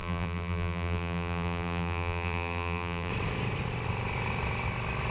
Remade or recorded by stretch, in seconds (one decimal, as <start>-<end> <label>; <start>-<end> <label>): 0.0-3.1 remade; 3.1-5.1 recorded